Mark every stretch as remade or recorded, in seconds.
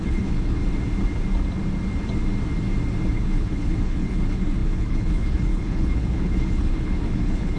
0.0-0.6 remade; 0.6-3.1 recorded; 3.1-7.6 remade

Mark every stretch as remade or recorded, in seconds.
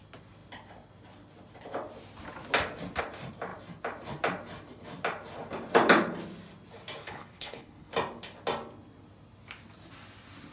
0.0-7.0 recorded; 7.0-7.9 remade; 7.9-10.5 recorded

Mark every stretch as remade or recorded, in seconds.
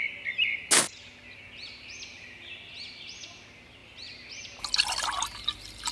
0.0-5.9 recorded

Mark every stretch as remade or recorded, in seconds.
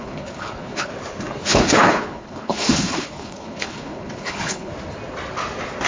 0.0-0.9 remade; 0.9-1.4 recorded; 1.4-4.7 remade; 4.7-5.9 recorded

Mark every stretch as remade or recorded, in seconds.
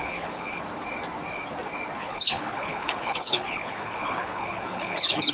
0.0-0.6 remade; 0.6-2.0 recorded; 2.0-5.3 remade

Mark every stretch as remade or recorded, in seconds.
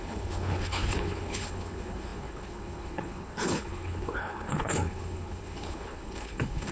0.0-6.7 remade